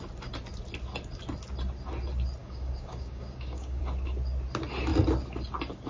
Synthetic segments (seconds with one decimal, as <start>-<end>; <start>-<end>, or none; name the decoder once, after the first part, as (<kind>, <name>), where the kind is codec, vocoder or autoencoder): 2.4-3.8 (codec, DAC)